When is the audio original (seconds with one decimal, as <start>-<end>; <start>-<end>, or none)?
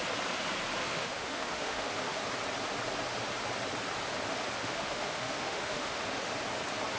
0.0-0.8; 2.2-4.6; 6.0-7.0